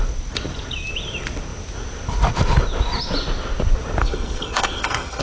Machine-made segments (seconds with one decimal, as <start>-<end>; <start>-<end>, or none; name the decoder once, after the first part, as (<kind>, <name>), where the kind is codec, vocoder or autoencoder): 4.0-5.2 (codec, SNAC)